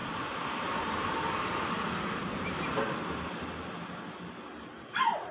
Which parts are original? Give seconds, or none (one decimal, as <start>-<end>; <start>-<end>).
1.7-2.2; 2.7-5.3